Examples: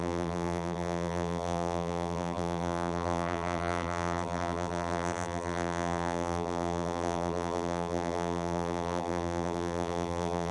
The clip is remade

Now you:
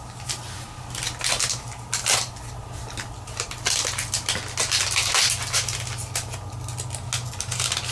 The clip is recorded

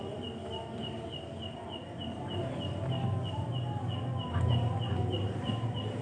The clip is remade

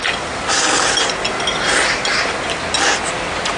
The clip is recorded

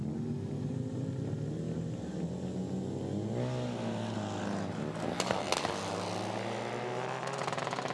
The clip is recorded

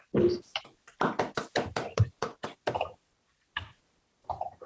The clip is remade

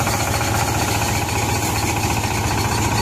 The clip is recorded